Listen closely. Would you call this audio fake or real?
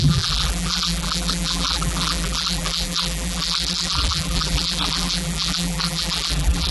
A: fake